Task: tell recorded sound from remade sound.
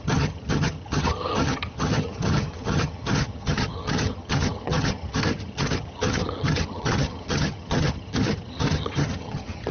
remade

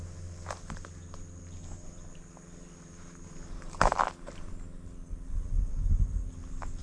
recorded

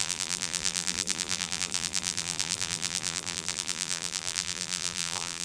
remade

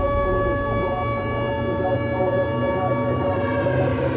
recorded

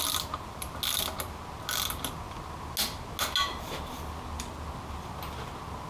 recorded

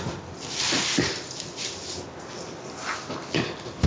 recorded